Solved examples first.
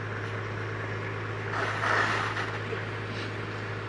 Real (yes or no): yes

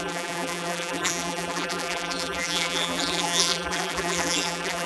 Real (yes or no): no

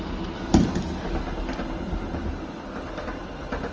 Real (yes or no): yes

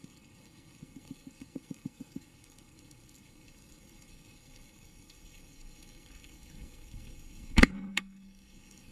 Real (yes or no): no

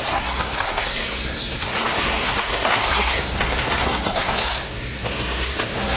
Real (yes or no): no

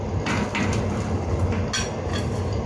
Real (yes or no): yes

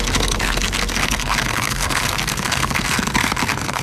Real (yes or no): no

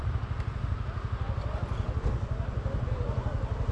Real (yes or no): yes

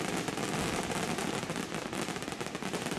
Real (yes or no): yes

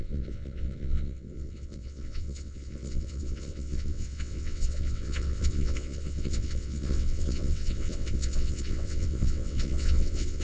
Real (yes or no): no